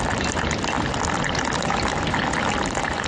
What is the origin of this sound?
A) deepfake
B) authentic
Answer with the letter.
B